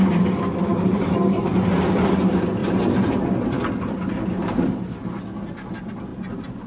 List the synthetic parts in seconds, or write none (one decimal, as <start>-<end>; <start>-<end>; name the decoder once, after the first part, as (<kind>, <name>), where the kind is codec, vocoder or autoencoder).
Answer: 0.7-1.7 (vocoder, BigVGAN v2); 2.6-3.2; 6.1-6.7